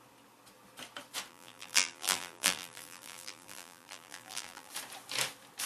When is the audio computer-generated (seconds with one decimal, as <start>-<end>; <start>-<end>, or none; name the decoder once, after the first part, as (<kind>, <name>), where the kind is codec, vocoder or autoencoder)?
1.3-4.7 (vocoder, BigVGAN v2)